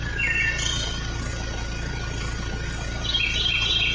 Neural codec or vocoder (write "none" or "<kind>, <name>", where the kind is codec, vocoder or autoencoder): none